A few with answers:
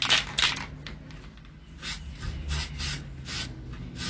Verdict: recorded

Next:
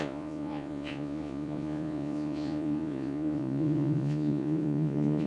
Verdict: remade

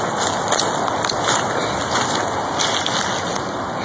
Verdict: recorded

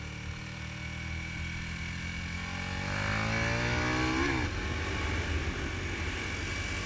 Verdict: recorded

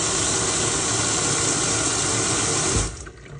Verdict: recorded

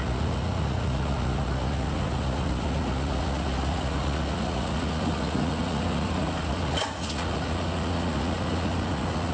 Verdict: remade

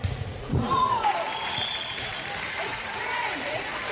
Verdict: remade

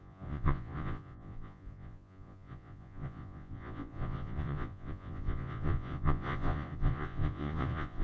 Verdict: remade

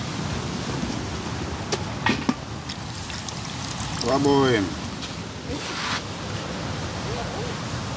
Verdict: recorded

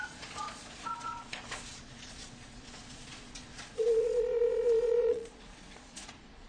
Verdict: remade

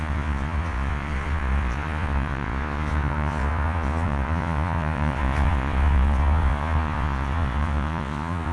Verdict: remade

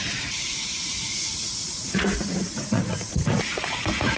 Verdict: remade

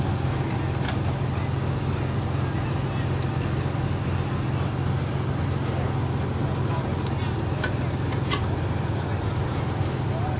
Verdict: recorded